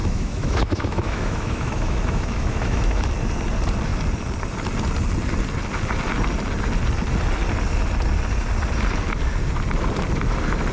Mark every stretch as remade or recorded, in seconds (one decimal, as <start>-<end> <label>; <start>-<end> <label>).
0.0-3.1 remade; 3.1-10.7 recorded